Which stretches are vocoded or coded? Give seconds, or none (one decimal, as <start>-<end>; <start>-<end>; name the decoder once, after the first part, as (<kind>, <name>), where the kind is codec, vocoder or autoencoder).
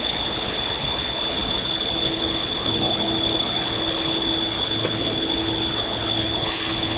0.0-7.0 (codec, HILCodec)